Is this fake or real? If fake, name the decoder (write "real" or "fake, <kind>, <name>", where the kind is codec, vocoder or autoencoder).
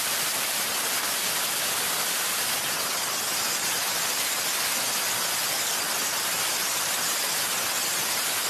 real